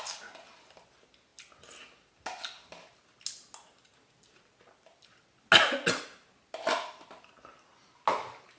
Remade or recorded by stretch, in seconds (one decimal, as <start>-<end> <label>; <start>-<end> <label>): 0.0-8.6 recorded